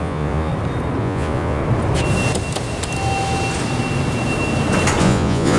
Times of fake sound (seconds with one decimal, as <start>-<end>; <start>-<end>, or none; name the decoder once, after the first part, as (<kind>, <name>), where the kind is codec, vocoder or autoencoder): 0.0-0.5 (vocoder, Vocos); 1.0-1.6; 5.0-5.6